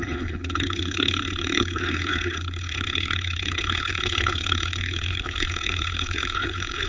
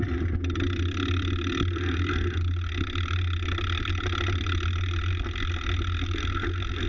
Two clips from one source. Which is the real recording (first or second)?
second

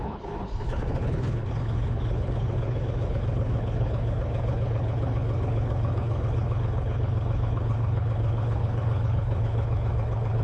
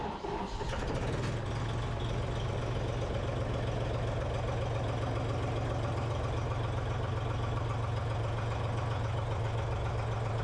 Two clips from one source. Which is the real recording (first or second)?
second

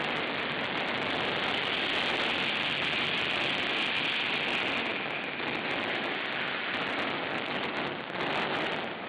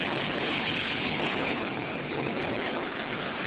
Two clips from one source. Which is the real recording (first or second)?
first